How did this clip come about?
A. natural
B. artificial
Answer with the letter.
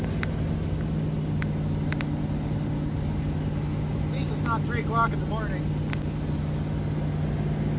A